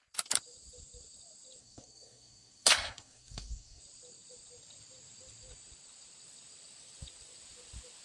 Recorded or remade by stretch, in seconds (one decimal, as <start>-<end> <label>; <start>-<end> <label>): 0.0-1.6 recorded; 1.6-3.8 remade; 3.8-8.0 recorded